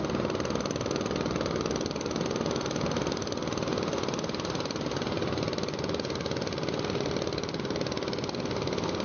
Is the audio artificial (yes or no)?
no